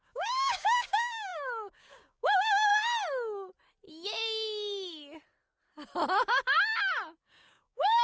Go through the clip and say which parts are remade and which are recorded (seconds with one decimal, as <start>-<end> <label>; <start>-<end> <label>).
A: 0.0-2.7 remade; 2.7-7.2 recorded; 7.2-8.0 remade